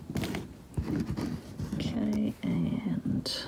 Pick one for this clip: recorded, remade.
recorded